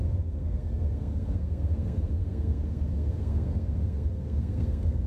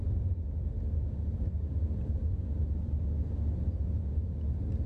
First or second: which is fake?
first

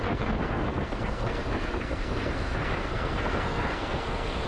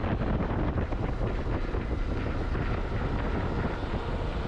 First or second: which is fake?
first